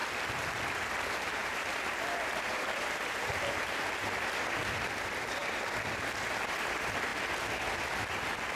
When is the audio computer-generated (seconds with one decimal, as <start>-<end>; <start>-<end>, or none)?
1.4-4.2